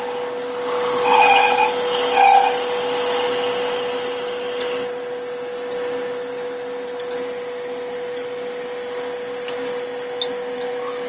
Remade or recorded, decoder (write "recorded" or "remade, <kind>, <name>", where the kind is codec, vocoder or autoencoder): recorded